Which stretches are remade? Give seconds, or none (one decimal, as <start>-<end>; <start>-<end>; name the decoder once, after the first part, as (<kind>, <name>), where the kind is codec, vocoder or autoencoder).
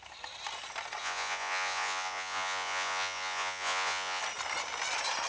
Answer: 1.0-4.2 (vocoder, Vocos)